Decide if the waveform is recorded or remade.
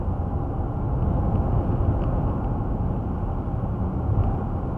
recorded